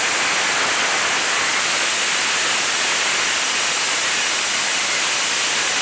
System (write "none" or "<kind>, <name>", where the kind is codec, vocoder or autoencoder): none